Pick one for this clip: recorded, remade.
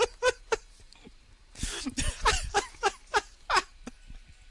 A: recorded